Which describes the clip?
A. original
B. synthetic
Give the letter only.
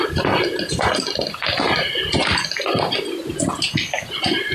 A